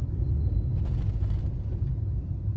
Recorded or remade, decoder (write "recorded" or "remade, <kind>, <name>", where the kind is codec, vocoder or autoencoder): recorded